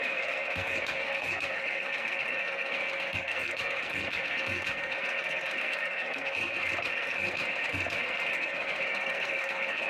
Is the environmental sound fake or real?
fake